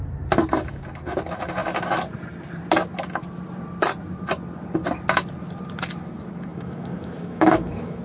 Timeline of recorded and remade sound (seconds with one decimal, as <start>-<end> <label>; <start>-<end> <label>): 0.0-6.5 recorded; 6.5-8.0 remade